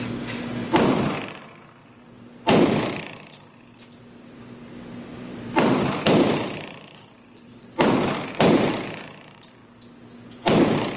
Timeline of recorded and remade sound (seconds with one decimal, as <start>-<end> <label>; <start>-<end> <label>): 0.0-0.6 recorded; 0.6-1.1 remade; 1.1-1.8 recorded; 1.8-3.0 remade; 3.0-5.1 recorded; 5.1-8.7 remade; 8.7-11.0 recorded